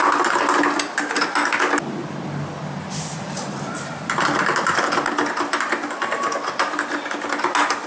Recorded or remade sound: recorded